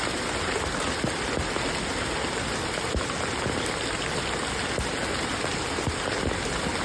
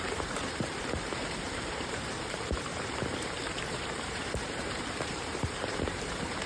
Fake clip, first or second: second